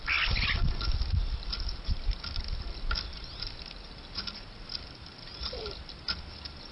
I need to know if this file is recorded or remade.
recorded